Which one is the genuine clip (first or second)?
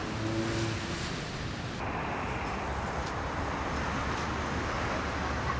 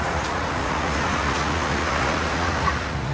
first